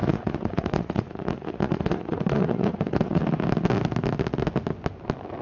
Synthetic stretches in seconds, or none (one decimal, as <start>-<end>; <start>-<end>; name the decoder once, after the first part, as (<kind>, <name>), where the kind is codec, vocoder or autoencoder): 0.0-3.2 (vocoder, Vocos)